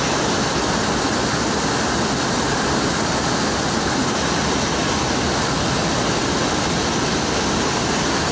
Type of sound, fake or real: real